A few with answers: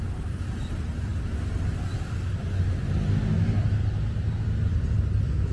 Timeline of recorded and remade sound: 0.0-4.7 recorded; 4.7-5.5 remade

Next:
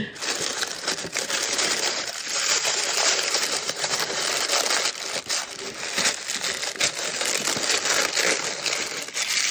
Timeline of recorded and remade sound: 0.0-0.5 recorded; 0.5-4.3 remade; 4.3-9.5 recorded

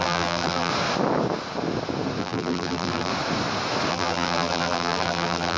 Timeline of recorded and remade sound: 0.0-0.7 remade; 0.7-2.2 recorded; 2.2-3.1 remade; 3.1-3.9 recorded; 3.9-5.6 remade

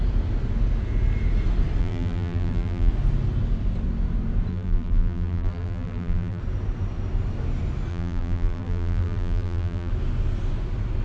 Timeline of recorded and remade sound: 0.0-1.8 recorded; 1.8-2.9 remade; 2.9-4.5 recorded; 4.5-6.4 remade; 6.4-7.9 recorded; 7.9-9.9 remade; 9.9-11.0 recorded

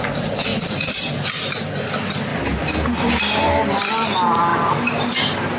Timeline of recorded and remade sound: 0.0-0.5 recorded; 0.5-1.1 remade; 1.1-5.6 recorded

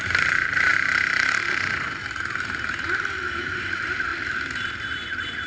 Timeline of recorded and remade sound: 0.0-4.1 remade; 4.1-5.5 recorded

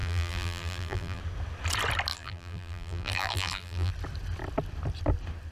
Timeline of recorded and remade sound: 0.0-1.2 remade; 1.2-2.1 recorded; 2.1-3.9 remade; 3.9-5.5 recorded

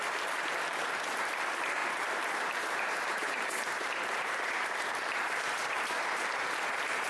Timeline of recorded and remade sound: 0.0-7.1 remade